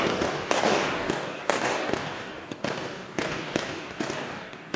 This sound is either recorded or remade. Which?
remade